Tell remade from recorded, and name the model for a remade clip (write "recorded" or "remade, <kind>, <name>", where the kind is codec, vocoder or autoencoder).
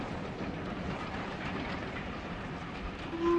recorded